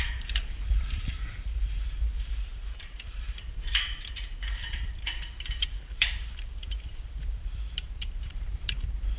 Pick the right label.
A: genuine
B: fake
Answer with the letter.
B